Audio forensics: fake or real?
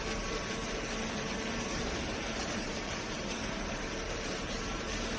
fake